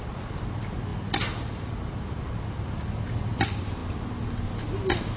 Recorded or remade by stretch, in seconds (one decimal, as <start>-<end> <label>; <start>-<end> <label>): 0.0-5.2 recorded